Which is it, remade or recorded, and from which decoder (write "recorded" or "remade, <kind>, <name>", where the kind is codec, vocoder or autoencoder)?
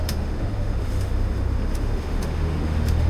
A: remade, autoencoder, DAC-VAE